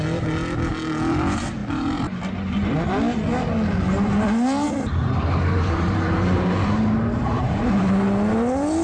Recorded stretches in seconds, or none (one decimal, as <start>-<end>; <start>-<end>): 0.0-1.6; 2.2-5.0; 7.7-8.8